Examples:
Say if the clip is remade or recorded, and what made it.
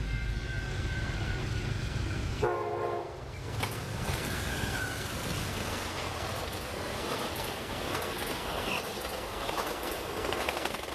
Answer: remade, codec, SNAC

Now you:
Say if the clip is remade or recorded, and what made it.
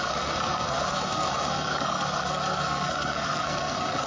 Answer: remade, codec, SNAC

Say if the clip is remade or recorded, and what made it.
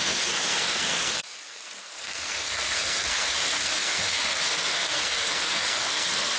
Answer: remade, codec, SNAC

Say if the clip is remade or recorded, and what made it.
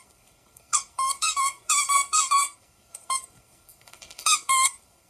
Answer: remade, codec, SNAC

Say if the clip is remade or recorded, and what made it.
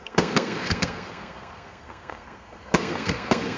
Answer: remade, codec, SNAC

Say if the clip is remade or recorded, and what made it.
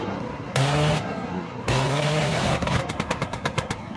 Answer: remade, codec, SNAC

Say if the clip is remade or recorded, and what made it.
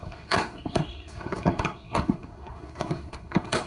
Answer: remade, codec, SNAC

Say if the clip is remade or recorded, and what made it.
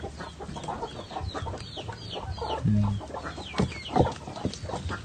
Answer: recorded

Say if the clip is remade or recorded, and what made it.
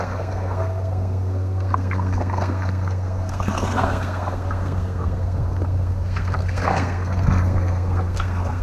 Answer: remade, codec, SNAC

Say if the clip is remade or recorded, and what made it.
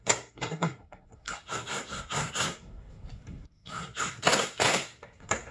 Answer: remade, codec, SNAC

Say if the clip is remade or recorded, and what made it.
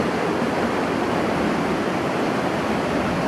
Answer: recorded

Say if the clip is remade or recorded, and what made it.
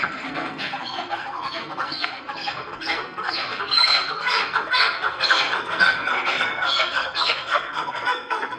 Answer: remade, codec, SNAC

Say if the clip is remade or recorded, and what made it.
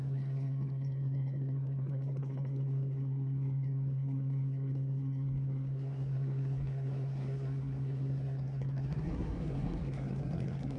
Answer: remade, codec, SNAC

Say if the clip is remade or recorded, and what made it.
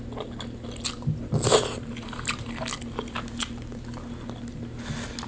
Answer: recorded